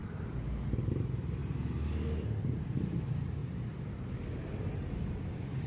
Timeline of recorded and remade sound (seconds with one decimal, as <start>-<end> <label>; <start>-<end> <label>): 0.0-0.9 recorded; 0.9-1.4 remade; 1.4-2.6 recorded; 2.6-3.4 remade; 3.4-5.3 recorded; 5.3-5.7 remade